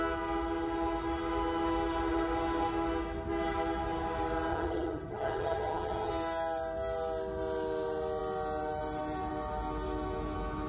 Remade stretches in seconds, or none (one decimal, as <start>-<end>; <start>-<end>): 4.5-6.1